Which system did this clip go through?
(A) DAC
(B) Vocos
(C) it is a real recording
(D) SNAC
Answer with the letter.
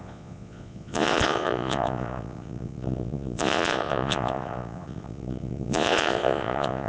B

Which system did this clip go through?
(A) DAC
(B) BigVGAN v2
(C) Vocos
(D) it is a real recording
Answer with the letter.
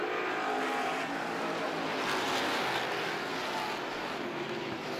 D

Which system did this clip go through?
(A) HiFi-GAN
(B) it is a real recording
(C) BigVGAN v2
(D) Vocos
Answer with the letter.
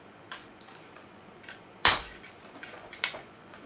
D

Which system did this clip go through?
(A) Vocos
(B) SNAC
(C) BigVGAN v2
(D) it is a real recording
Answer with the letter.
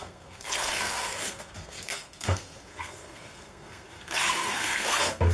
B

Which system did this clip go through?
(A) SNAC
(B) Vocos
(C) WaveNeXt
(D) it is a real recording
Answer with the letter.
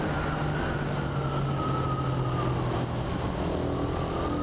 D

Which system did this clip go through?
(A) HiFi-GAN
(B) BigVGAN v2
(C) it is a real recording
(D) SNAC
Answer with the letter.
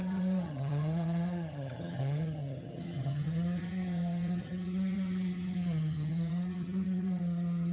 A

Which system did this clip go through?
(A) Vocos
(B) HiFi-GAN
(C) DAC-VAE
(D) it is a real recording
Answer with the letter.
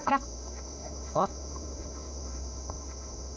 C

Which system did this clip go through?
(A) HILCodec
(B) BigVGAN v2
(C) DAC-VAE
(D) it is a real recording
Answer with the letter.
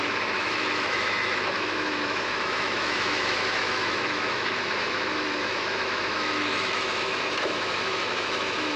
C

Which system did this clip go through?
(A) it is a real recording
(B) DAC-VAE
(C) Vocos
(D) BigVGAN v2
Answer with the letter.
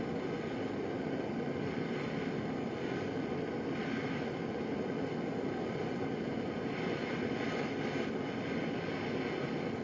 A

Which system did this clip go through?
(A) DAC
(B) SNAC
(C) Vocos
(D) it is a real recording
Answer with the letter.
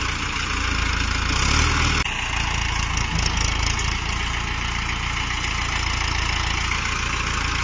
D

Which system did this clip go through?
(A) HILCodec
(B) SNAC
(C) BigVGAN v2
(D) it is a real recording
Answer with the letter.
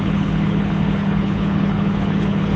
A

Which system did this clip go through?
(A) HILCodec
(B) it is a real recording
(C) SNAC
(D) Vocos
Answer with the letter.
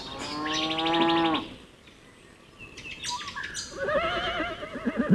B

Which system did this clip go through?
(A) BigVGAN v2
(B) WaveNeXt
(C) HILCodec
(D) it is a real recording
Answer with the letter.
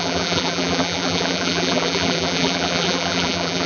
A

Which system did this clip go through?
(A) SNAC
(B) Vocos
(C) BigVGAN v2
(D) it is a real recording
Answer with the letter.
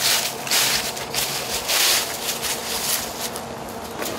C